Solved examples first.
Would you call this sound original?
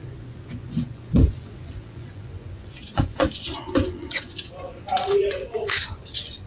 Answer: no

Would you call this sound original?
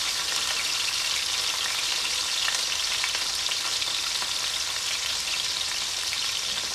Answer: yes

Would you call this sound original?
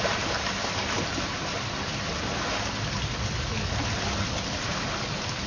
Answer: yes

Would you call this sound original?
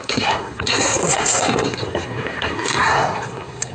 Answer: no